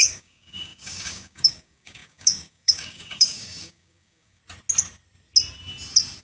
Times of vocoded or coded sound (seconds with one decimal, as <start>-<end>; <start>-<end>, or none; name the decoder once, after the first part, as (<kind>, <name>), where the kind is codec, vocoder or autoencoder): 0.0-4.4 (codec, DAC)